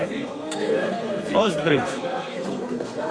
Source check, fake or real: fake